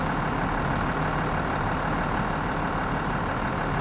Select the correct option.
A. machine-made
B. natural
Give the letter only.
B